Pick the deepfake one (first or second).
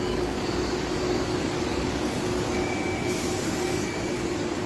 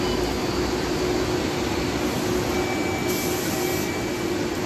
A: first